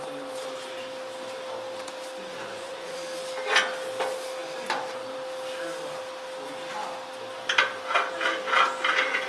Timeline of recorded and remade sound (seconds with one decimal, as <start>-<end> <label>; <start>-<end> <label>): 0.0-2.3 recorded; 2.3-3.0 remade; 3.0-9.3 recorded